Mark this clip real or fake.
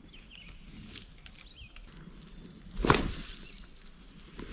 real